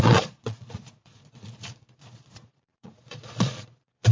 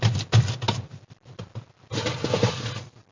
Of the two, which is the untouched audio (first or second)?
second